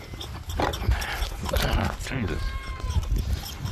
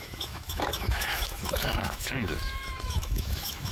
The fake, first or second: second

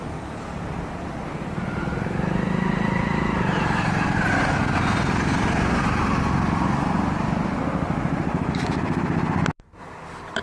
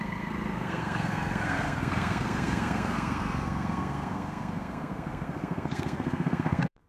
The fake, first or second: second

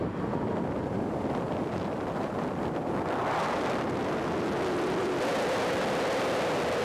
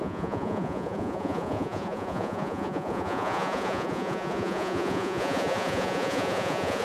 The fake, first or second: second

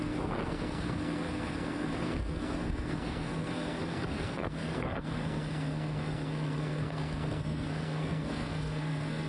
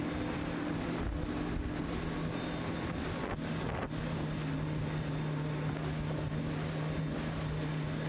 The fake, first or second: first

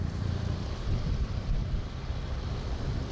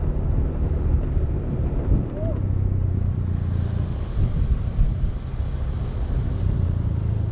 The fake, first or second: first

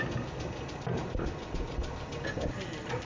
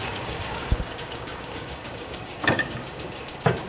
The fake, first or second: second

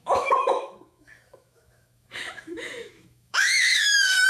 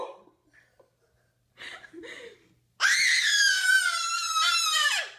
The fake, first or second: first